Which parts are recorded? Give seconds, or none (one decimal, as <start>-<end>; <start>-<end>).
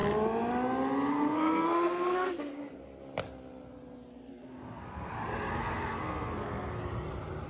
0.0-1.1; 2.6-4.3; 5.1-5.5; 6.8-7.5